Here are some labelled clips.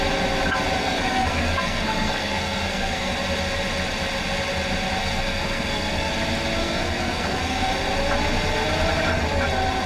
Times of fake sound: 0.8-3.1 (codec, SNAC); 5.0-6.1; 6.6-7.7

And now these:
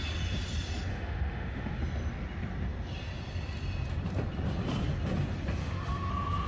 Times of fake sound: 0.9-1.8 (autoencoder, DAC-VAE); 5.6-6.1

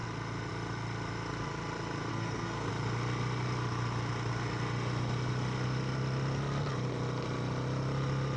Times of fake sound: 2.1-2.7 (codec, SNAC)

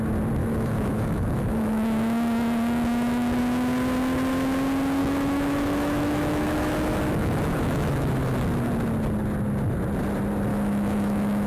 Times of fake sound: 0.4-3.4 (autoencoder, DAC-VAE); 5.0-8.1; 10.5-11.5

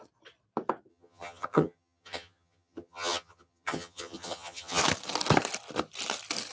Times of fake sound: 0.9-4.8 (vocoder, HiFi-GAN)

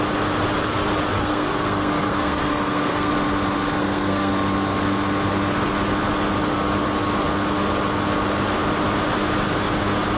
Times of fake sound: 1.2-3.1 (codec, SNAC); 3.8-4.3

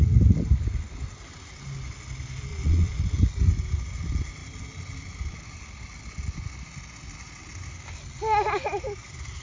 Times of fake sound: 2.5-3.0 (vocoder, Vocos)

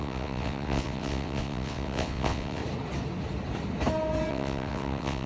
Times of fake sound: 0.0-2.6 (vocoder, WaveNeXt); 4.3-5.3